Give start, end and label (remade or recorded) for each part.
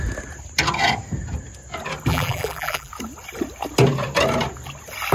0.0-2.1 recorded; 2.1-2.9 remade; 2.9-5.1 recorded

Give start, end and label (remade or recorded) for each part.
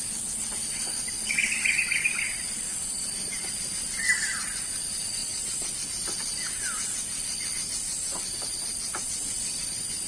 0.0-10.1 recorded